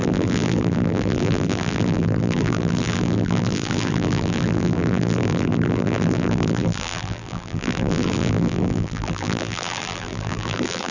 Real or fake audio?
fake